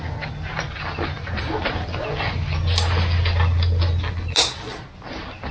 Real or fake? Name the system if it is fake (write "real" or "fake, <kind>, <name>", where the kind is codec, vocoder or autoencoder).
real